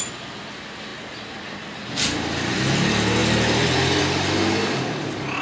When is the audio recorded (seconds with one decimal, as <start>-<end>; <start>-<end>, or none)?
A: 0.0-5.4